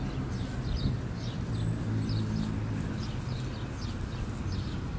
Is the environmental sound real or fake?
real